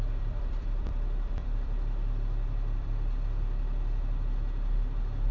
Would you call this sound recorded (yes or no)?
no